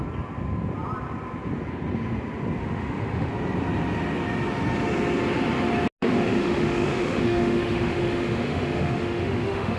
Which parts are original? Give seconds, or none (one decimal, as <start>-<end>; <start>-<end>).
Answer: 0.0-2.6; 3.3-6.0